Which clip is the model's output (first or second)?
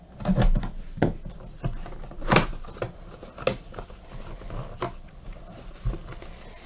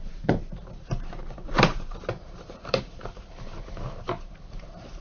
second